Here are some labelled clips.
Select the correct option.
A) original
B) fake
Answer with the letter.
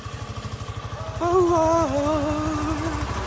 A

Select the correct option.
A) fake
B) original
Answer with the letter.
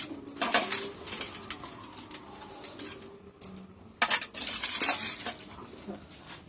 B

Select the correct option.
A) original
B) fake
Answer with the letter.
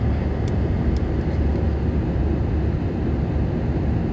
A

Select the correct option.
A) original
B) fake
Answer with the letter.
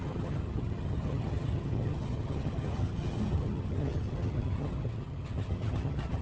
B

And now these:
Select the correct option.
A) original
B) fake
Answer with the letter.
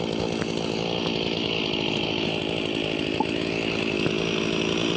A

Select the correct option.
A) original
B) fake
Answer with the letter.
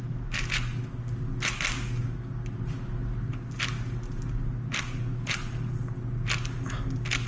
A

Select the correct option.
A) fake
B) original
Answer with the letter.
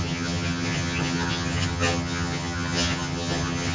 A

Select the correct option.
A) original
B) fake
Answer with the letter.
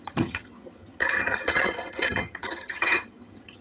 B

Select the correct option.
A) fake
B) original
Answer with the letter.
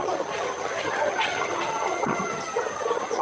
A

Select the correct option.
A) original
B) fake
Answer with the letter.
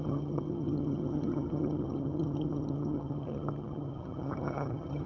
B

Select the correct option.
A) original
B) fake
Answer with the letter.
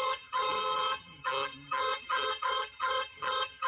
B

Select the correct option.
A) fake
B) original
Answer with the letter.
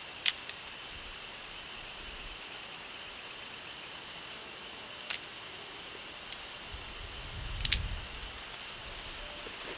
B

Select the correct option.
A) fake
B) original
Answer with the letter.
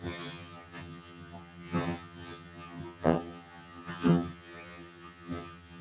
A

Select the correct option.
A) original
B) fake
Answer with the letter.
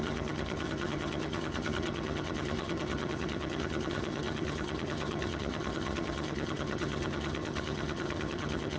B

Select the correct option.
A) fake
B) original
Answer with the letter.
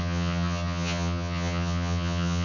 A